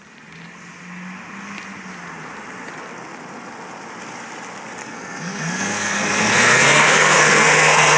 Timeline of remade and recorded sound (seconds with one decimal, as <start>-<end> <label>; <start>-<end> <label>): 0.0-4.8 recorded; 4.8-8.0 remade